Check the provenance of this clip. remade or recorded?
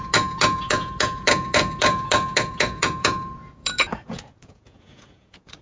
remade